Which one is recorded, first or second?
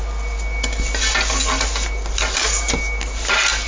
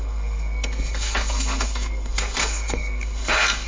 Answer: first